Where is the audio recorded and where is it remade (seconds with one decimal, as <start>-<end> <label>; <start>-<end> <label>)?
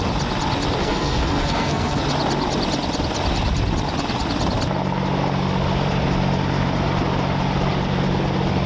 0.0-0.8 recorded; 0.8-2.0 remade; 2.0-8.7 recorded